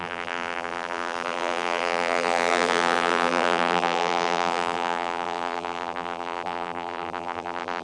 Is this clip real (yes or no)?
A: no